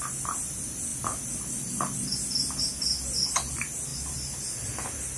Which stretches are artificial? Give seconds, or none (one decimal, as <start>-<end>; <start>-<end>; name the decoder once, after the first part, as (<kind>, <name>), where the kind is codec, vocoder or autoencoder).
3.9-4.7 (vocoder, BigVGAN v2)

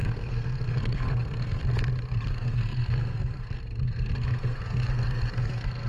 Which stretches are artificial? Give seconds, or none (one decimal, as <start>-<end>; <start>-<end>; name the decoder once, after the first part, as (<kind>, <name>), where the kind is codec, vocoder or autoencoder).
0.0-1.6 (codec, SNAC); 2.3-5.9